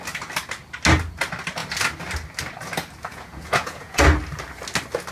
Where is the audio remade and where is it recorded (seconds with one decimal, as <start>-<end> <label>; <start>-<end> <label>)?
0.0-3.1 recorded; 3.1-4.0 remade; 4.0-5.1 recorded

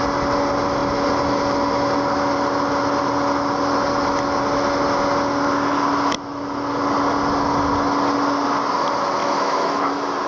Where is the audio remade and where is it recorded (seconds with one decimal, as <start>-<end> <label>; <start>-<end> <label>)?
0.0-9.2 recorded; 9.2-9.9 remade; 9.9-10.3 recorded